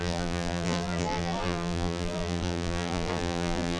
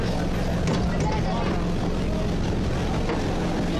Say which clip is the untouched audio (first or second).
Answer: second